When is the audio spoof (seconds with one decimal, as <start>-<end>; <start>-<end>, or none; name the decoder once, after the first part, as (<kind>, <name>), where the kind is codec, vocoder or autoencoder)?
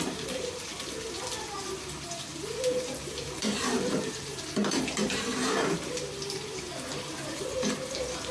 0.0-0.7 (vocoder, BigVGAN v2); 1.4-8.3